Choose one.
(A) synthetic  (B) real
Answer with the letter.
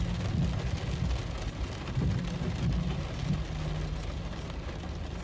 B